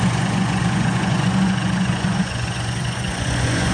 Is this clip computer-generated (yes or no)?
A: yes